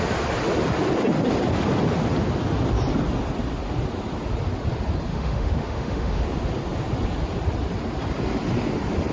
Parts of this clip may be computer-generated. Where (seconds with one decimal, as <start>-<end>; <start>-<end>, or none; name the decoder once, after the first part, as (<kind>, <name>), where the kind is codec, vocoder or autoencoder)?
5.1-6.2 (autoencoder, DAC-VAE)